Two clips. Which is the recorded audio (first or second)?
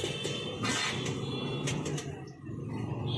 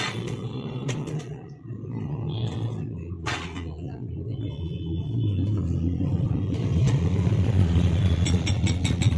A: first